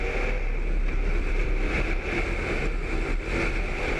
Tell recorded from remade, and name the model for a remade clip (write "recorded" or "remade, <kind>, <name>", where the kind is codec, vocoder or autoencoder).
remade, vocoder, BigVGAN v2